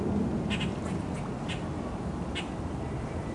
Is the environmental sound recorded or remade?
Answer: recorded